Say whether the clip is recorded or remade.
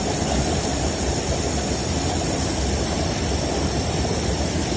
recorded